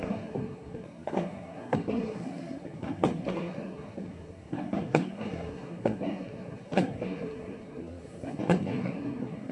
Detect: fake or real fake